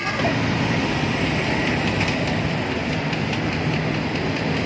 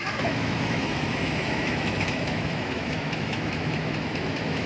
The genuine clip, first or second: first